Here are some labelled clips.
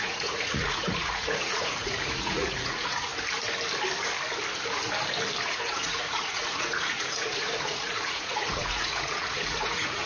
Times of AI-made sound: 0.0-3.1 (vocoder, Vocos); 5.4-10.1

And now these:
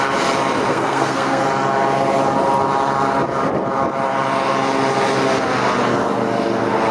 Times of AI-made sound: 0.7-1.4 (codec, SNAC)